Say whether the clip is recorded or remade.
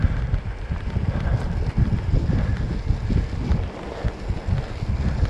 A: recorded